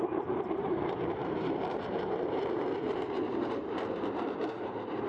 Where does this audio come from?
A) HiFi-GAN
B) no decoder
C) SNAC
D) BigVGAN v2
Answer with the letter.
D